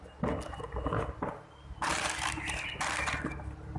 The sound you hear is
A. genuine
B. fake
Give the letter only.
A